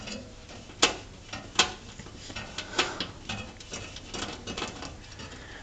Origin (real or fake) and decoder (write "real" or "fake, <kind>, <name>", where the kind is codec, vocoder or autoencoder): real